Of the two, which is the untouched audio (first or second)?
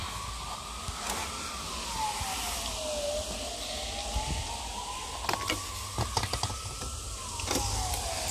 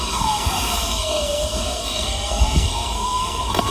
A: first